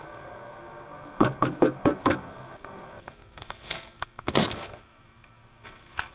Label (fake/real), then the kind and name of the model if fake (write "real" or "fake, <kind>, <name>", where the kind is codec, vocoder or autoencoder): fake, codec, SNAC